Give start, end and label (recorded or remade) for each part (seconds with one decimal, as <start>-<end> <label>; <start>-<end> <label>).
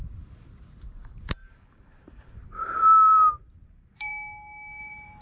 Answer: 0.0-4.1 remade; 4.1-4.8 recorded; 4.8-5.2 remade